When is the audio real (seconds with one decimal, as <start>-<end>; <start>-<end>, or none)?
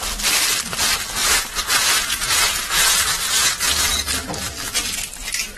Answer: 0.0-1.2; 3.8-5.6